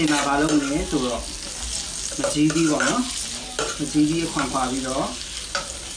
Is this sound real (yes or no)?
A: yes